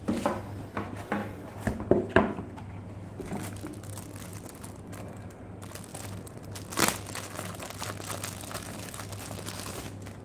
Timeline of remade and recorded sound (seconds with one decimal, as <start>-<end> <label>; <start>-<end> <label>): 0.0-1.2 recorded; 1.2-3.8 remade; 3.8-4.3 recorded; 4.3-4.8 remade; 4.8-5.9 recorded; 5.9-7.5 remade; 7.5-10.2 recorded